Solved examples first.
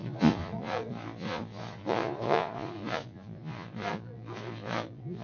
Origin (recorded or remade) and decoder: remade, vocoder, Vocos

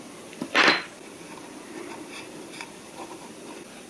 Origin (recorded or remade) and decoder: remade, vocoder, BigVGAN v2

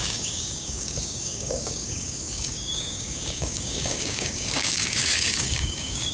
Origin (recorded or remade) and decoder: remade, codec, DAC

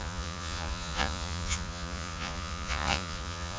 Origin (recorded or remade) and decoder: remade, vocoder, Vocos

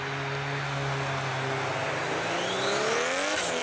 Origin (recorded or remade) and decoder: recorded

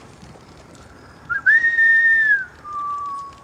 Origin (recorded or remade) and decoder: remade, vocoder, BigVGAN v2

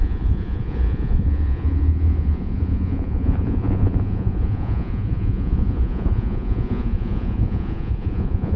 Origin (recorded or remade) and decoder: remade, vocoder, Vocos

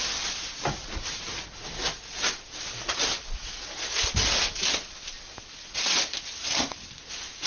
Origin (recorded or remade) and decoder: recorded